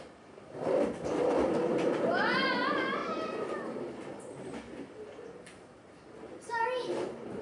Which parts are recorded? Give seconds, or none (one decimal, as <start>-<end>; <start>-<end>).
0.0-7.4